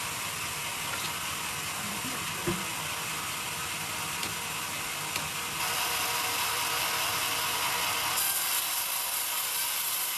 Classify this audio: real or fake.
real